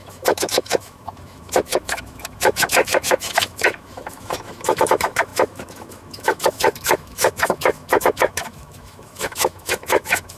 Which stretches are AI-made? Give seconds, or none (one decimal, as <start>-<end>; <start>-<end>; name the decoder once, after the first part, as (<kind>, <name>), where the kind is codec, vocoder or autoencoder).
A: 0.0-10.4 (autoencoder, DAC-VAE)